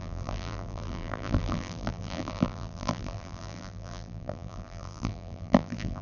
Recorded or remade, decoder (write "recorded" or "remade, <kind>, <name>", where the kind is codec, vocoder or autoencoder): remade, vocoder, BigVGAN v2